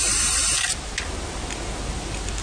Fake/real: real